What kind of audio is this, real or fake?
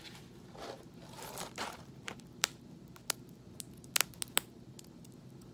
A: real